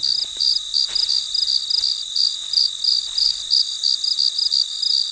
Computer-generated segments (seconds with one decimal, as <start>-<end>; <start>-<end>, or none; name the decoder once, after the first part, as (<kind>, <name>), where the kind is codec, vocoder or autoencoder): 0.5-3.5 (vocoder, BigVGAN v2)